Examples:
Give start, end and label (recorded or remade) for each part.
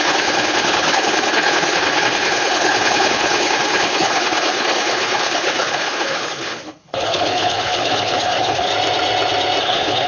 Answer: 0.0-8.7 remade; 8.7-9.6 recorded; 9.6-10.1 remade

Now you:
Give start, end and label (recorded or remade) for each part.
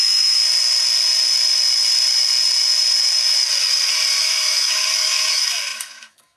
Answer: 0.0-0.4 remade; 0.4-4.2 recorded; 4.2-6.4 remade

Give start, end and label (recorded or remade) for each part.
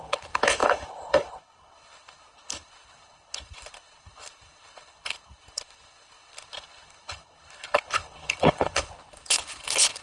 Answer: 0.0-10.0 remade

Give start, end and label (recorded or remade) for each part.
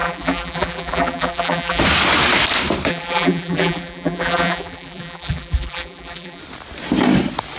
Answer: 0.0-1.8 remade; 1.8-2.9 recorded; 2.9-6.4 remade; 6.4-7.6 recorded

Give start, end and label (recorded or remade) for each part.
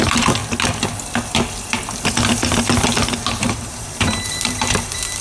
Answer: 0.0-0.4 remade; 0.4-3.4 recorded; 3.4-5.2 remade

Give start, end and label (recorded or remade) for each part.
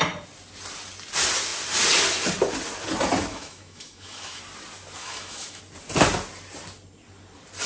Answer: 0.0-3.3 recorded; 3.3-4.4 remade; 4.4-5.0 recorded; 5.0-5.6 remade; 5.6-7.7 recorded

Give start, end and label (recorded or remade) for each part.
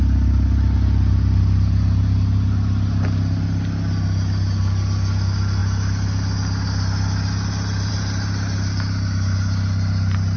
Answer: 0.0-10.4 recorded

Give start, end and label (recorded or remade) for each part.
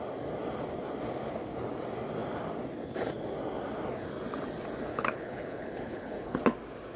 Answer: 0.0-4.9 recorded; 4.9-6.4 remade; 6.4-7.0 recorded